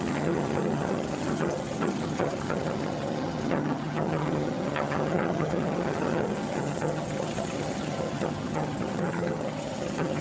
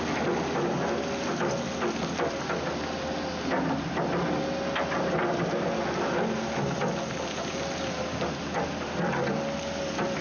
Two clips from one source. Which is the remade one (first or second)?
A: first